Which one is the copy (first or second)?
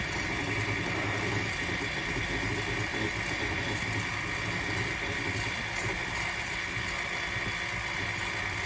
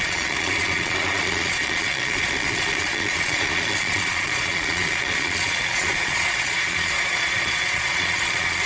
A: second